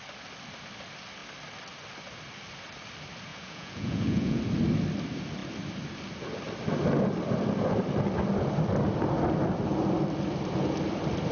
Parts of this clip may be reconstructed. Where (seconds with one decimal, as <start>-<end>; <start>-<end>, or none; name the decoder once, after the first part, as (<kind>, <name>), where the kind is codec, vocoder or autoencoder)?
3.3-4.4 (vocoder, Vocos)